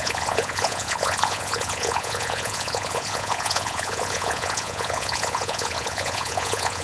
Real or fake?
fake